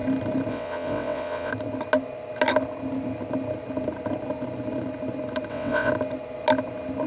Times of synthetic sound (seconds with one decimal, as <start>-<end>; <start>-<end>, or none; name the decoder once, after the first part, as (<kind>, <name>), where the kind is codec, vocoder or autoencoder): 0.5-1.5 (vocoder, WaveNeXt); 5.5-5.9

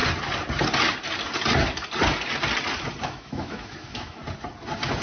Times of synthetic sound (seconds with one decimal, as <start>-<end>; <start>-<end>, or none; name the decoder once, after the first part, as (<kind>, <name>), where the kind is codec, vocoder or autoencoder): 3.0-4.2 (autoencoder, DAC-VAE)

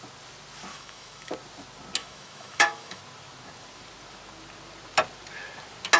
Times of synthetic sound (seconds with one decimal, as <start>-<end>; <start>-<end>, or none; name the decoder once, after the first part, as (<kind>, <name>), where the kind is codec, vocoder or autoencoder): 0.7-1.3 (autoencoder, DAC-VAE); 2.0-3.0